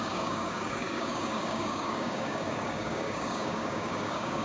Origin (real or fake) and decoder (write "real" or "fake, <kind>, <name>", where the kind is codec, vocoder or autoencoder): fake, codec, DAC